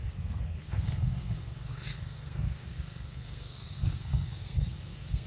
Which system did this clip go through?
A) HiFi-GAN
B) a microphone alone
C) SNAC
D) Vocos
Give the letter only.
C